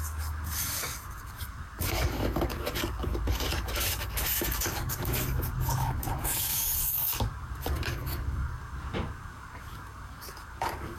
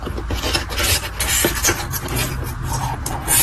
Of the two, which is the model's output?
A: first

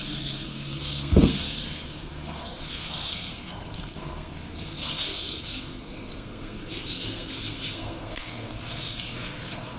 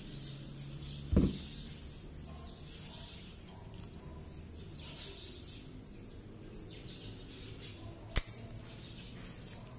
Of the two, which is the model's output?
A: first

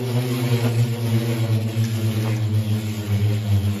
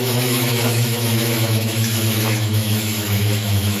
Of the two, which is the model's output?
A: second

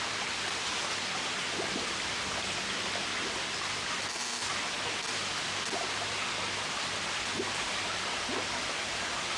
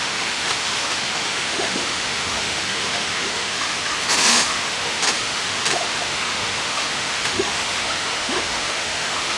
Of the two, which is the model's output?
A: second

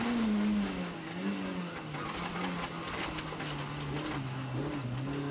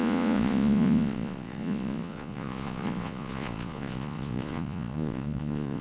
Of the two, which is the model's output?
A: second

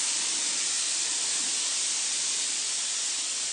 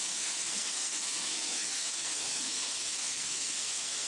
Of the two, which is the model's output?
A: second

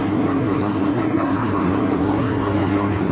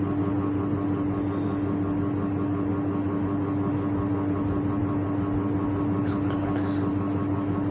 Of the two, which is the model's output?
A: first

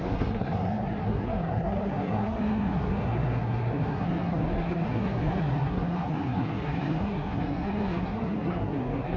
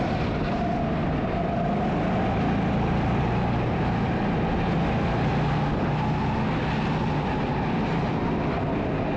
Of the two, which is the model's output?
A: first